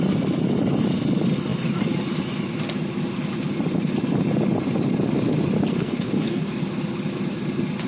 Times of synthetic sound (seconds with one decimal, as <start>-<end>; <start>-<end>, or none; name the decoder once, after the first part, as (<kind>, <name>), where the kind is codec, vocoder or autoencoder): 5.7-6.5 (codec, SNAC)

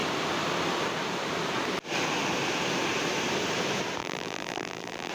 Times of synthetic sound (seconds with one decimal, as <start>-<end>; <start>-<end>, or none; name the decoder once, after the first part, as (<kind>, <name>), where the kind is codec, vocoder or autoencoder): 4.0-5.1 (vocoder, BigVGAN v2)

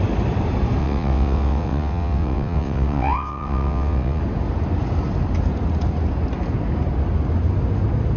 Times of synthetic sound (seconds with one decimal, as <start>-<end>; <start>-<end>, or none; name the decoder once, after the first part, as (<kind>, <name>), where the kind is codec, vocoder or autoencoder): 0.8-4.2 (vocoder, WaveNeXt)

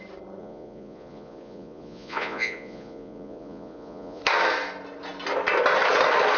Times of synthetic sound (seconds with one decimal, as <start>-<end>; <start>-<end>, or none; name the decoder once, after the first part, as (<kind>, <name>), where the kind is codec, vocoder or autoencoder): 0.4-4.2 (vocoder, Vocos)

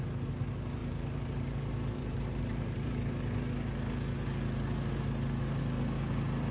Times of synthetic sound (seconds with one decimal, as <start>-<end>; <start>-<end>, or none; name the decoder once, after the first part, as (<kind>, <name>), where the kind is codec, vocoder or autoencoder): 0.8-2.9 (vocoder, BigVGAN v2)

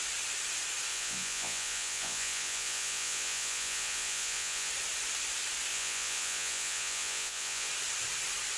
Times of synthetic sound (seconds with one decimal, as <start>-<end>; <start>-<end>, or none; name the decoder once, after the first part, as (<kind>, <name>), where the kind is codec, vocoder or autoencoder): 0.9-4.7 (vocoder, Vocos); 5.7-7.7

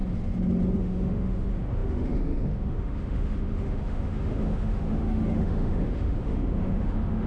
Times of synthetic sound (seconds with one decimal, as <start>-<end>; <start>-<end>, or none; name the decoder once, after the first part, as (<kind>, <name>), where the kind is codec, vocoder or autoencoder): 0.8-7.3 (autoencoder, DAC-VAE)